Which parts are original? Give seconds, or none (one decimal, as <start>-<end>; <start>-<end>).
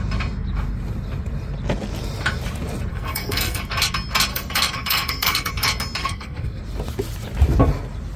0.0-2.9; 3.6-4.3; 5.5-6.0; 6.6-8.2